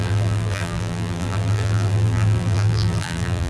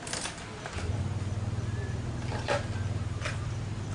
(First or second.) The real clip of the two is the second